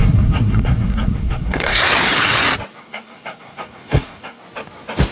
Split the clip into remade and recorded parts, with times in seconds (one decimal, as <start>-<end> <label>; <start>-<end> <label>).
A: 0.0-1.9 remade; 1.9-2.8 recorded; 2.8-4.4 remade; 4.4-5.1 recorded